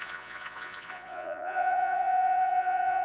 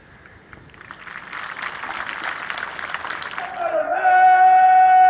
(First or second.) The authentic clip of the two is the second